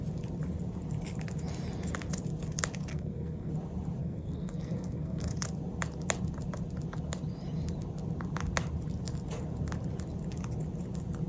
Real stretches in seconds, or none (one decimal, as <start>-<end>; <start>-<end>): 0.0-2.9; 3.5-4.0; 5.3-11.3